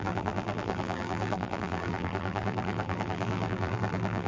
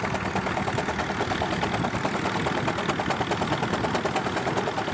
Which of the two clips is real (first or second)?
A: second